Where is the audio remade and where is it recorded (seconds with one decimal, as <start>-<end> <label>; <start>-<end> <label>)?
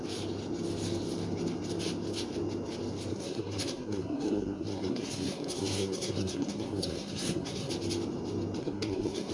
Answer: 0.0-3.1 recorded; 3.1-7.7 remade; 7.7-8.6 recorded; 8.6-9.3 remade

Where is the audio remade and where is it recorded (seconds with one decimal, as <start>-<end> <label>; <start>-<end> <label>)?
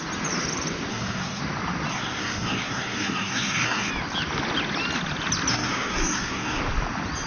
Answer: 0.0-0.9 recorded; 0.9-1.4 remade; 1.4-1.9 recorded; 1.9-3.9 remade; 3.9-5.5 recorded; 5.5-6.6 remade; 6.6-7.3 recorded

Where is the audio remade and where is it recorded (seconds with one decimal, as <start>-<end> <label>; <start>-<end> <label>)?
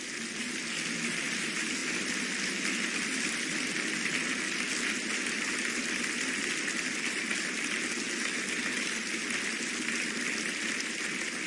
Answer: 0.0-11.5 recorded